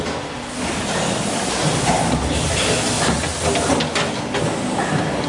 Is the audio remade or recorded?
recorded